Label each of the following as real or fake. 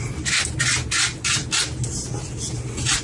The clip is real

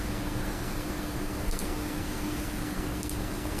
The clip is fake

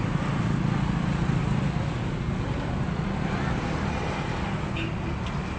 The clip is real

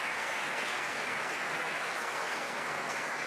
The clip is fake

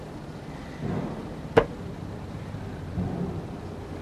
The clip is fake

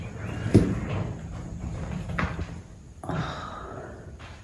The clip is fake